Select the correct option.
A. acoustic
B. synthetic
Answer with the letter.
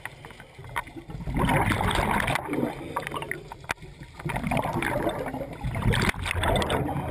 A